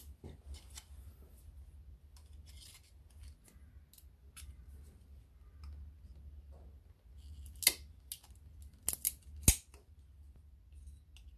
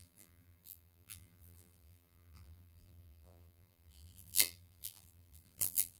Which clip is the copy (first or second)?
second